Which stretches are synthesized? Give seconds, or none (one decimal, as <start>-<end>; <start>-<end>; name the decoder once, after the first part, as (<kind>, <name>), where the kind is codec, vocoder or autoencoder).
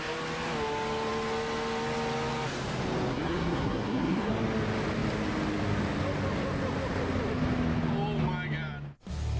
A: 3.1-4.3 (codec, SNAC)